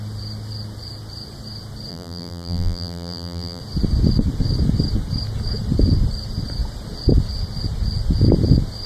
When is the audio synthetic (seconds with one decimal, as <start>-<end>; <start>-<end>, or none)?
1.9-3.6